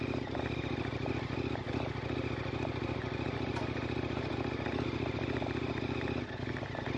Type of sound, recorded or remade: recorded